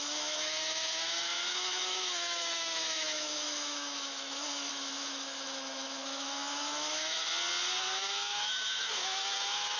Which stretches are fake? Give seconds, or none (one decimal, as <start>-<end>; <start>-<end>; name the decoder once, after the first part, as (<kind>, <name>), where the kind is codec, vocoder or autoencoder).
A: 0.0-7.3 (autoencoder, DAC-VAE); 7.8-9.8